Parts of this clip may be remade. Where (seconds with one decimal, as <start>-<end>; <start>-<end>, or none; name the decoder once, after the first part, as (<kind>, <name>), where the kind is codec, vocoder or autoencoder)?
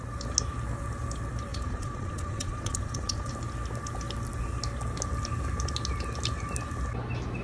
1.5-3.3 (vocoder, Vocos)